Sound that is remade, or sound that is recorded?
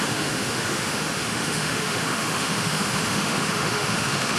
remade